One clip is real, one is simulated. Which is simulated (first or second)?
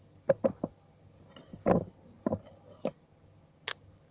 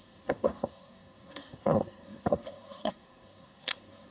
second